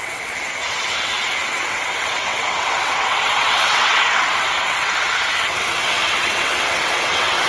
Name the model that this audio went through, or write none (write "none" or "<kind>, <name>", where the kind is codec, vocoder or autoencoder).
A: vocoder, WaveNeXt